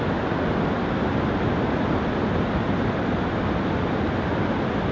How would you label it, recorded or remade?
recorded